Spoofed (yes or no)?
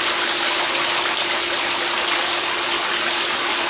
no